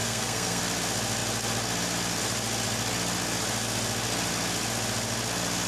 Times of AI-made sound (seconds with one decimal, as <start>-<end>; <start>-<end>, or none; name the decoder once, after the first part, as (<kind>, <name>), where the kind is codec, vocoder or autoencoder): 0.0-0.6 (codec, SNAC)